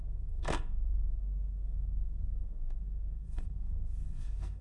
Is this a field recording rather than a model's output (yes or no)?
no